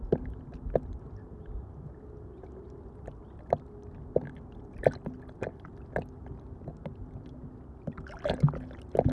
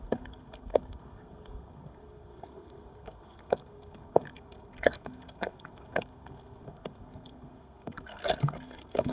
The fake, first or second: second